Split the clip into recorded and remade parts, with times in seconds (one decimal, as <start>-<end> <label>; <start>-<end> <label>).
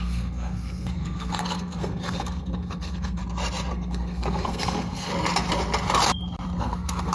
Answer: 0.0-3.2 remade; 3.2-3.7 recorded; 3.7-5.1 remade; 5.1-6.6 recorded; 6.6-7.1 remade